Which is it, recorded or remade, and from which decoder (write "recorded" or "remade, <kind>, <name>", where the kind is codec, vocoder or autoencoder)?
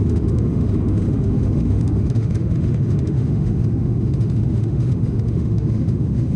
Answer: remade, autoencoder, DAC-VAE